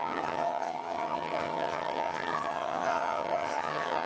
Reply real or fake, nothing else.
fake